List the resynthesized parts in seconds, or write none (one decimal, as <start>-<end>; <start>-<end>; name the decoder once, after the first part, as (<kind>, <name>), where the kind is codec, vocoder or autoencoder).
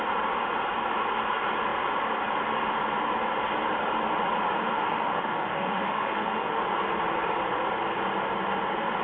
4.7-6.6 (autoencoder, DAC-VAE)